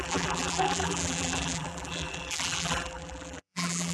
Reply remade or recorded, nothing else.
remade